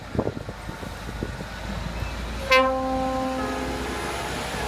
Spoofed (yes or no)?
no